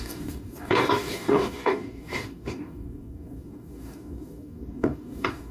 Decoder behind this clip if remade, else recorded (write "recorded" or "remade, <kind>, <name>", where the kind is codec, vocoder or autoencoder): remade, codec, DAC